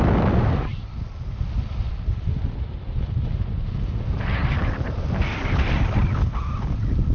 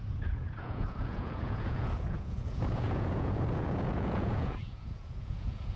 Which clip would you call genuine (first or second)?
first